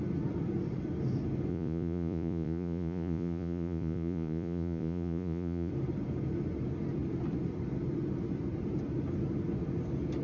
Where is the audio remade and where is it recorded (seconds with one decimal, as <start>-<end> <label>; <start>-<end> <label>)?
0.0-1.5 recorded; 1.5-5.7 remade; 5.7-10.2 recorded